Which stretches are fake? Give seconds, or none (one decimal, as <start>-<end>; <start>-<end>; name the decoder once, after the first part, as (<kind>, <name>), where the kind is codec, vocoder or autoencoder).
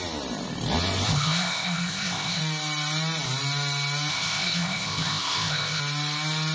1.1-2.4 (codec, ZipCodec); 4.1-5.8